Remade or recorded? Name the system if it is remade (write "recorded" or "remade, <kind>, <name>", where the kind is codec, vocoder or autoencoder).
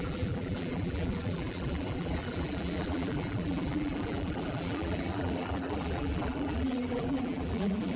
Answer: remade, vocoder, BigVGAN v2